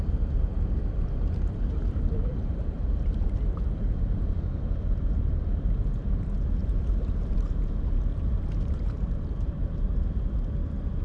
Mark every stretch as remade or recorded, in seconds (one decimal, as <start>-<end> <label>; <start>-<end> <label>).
0.0-2.3 recorded; 2.3-5.5 remade; 5.5-6.6 recorded; 6.6-10.3 remade; 10.3-11.0 recorded

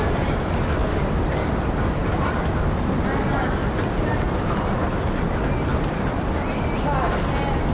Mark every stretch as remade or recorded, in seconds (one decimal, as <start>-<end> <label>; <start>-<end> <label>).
0.0-3.6 recorded; 3.6-4.4 remade; 4.4-7.7 recorded

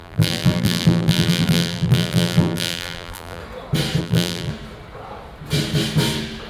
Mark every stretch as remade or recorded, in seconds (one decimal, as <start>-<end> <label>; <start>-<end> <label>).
0.0-3.4 remade; 3.4-4.0 recorded; 4.0-4.5 remade; 4.5-6.5 recorded

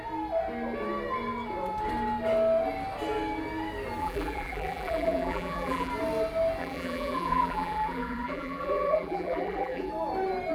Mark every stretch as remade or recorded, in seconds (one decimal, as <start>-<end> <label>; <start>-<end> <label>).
0.0-4.0 recorded; 4.0-5.9 remade; 5.9-6.6 recorded; 6.6-9.9 remade; 9.9-10.5 recorded

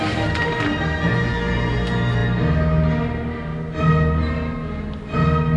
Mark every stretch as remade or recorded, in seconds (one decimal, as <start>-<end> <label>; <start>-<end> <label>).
0.0-5.6 recorded

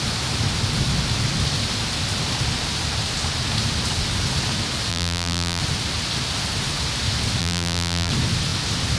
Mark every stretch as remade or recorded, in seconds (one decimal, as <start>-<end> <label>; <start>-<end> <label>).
0.0-4.9 recorded; 4.9-5.6 remade; 5.6-7.4 recorded; 7.4-8.1 remade; 8.1-9.0 recorded